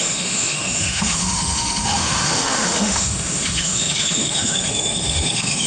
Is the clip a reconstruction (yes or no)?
yes